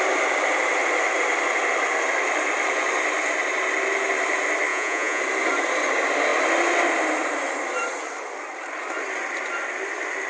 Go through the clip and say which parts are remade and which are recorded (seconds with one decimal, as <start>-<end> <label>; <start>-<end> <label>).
0.0-4.7 recorded; 4.7-5.2 remade; 5.2-10.3 recorded

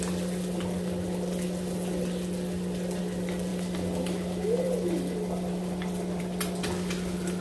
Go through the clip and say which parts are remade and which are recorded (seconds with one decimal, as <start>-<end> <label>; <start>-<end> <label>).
0.0-7.4 recorded

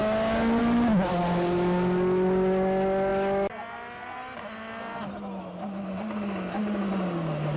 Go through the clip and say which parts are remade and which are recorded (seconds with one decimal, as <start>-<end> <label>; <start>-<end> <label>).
0.0-7.6 recorded

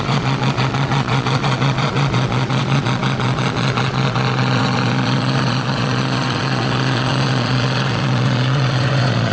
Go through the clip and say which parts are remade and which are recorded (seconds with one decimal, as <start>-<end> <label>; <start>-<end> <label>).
0.0-9.3 remade

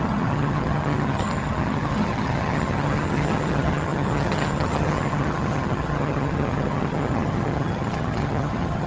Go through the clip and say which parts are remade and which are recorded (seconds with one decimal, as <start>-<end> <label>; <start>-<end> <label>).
0.0-8.9 remade

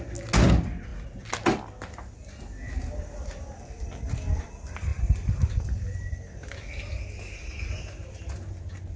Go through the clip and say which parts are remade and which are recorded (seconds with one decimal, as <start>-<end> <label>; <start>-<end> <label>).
0.0-9.0 recorded

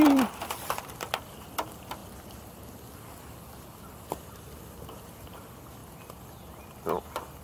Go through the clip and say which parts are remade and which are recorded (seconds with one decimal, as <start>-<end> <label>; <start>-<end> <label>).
0.0-2.0 remade; 2.0-4.6 recorded; 4.6-5.8 remade; 5.8-7.0 recorded; 7.0-7.4 remade

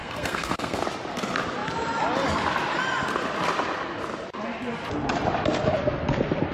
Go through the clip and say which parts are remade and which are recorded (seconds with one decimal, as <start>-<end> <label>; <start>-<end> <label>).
0.0-0.8 remade; 0.8-6.5 recorded